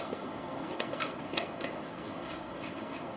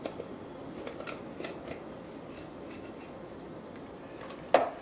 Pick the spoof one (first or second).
first